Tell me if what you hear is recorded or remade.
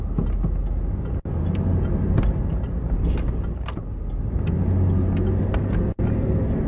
recorded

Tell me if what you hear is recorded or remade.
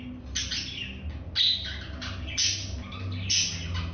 recorded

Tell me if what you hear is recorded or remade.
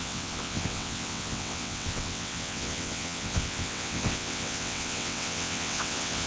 remade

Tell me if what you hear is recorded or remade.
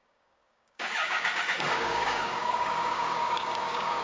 remade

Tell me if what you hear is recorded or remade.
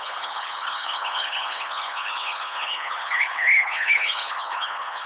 remade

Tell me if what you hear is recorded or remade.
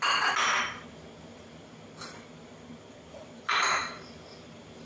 recorded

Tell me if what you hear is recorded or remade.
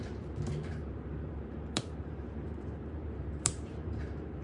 remade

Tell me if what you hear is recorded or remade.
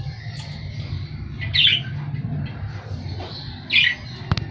recorded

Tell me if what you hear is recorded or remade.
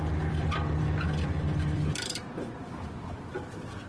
remade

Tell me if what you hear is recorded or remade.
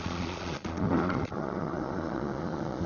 remade